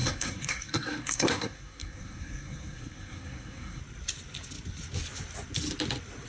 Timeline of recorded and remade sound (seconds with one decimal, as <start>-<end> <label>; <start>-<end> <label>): 0.0-3.8 remade; 3.8-6.3 recorded